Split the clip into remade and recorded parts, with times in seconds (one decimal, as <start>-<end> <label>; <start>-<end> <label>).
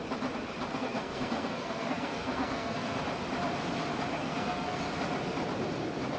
0.0-0.7 recorded; 0.7-3.0 remade; 3.0-4.1 recorded; 4.1-4.8 remade; 4.8-6.2 recorded